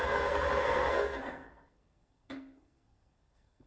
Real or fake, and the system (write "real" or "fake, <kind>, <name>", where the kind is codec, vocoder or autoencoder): fake, codec, SNAC